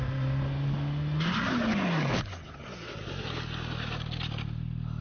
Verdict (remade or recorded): recorded